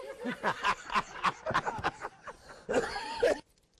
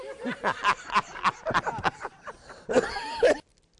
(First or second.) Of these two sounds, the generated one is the first